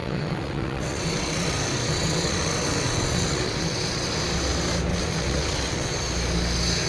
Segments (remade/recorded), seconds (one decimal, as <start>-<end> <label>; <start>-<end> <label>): 0.0-4.1 remade; 4.1-4.9 recorded; 4.9-5.9 remade; 5.9-6.9 recorded